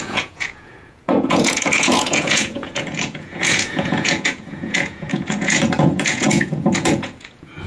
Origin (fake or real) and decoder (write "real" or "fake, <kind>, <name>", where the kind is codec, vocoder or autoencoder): fake, vocoder, Vocos